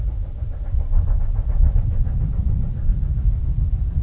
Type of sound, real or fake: fake